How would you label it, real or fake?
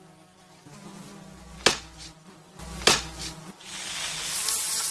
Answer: real